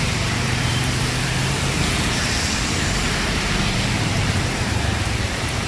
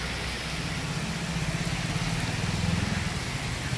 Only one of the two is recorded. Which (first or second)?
second